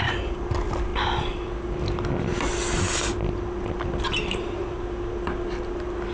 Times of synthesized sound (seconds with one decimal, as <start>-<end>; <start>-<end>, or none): none